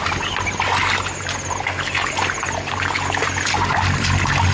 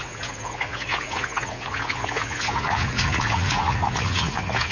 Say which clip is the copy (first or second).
second